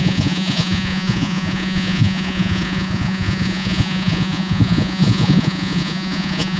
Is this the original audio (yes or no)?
no